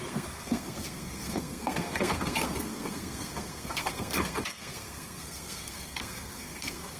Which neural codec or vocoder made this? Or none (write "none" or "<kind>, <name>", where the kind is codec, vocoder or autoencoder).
codec, SNAC